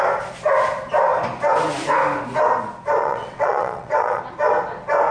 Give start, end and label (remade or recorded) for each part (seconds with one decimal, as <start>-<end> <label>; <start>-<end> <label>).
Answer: 0.0-3.0 recorded; 3.0-4.2 remade; 4.2-5.1 recorded